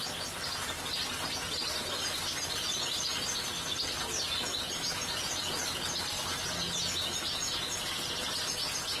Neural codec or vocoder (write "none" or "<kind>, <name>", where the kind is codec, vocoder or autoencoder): none